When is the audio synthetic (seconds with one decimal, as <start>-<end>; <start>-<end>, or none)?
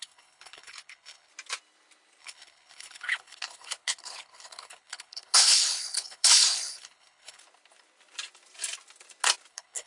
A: 0.0-1.3; 2.2-7.4; 9.5-9.9